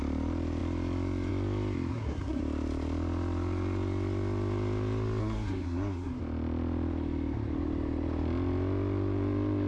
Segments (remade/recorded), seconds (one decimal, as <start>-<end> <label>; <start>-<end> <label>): 0.0-1.9 recorded; 1.9-2.4 remade; 2.4-5.2 recorded; 5.2-6.2 remade; 6.2-9.7 recorded